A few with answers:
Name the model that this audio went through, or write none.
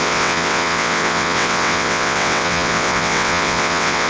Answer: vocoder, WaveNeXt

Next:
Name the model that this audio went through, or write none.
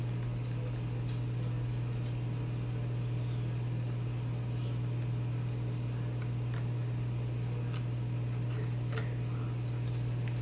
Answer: none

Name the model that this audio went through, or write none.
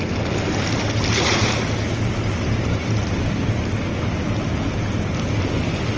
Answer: none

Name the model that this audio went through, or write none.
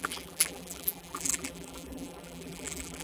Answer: vocoder, BigVGAN v2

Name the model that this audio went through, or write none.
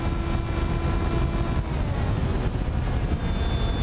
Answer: none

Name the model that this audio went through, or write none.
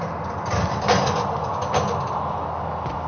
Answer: none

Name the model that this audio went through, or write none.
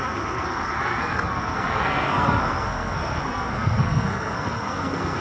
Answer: codec, SNAC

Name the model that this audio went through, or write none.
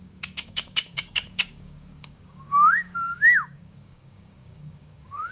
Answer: codec, DAC